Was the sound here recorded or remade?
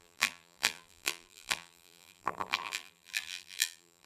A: remade